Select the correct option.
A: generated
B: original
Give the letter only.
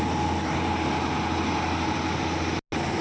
B